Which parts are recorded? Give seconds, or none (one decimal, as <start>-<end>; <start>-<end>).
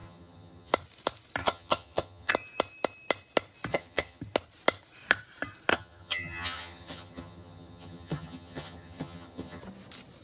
0.7-1.4; 2.3-3.7; 4.2-5.7; 9.6-10.2